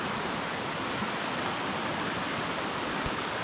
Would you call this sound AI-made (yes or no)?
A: no